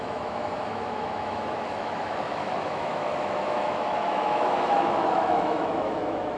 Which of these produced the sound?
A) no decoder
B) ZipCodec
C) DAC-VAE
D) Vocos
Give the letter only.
C